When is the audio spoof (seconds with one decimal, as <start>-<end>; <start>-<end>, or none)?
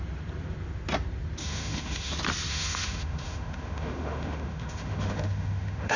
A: 1.4-2.1; 2.5-6.0